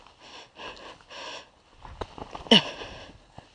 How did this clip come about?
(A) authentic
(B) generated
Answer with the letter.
A